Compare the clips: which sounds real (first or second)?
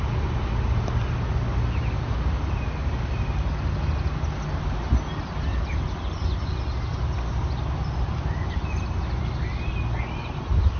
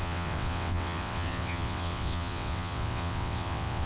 first